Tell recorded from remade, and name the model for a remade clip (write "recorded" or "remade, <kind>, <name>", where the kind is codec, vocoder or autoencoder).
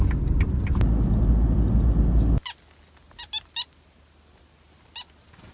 recorded